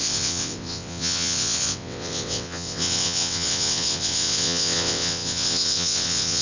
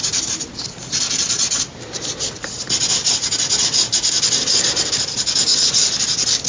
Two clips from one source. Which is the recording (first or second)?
second